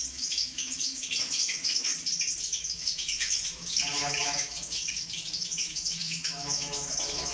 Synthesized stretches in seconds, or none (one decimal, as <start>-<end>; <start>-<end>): 0.0-1.9; 2.4-7.3

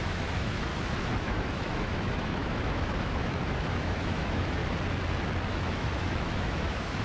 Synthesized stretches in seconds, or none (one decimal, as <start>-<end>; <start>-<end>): 0.0-0.7; 1.2-4.6; 5.5-7.0